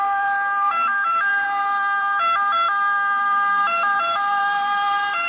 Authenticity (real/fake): fake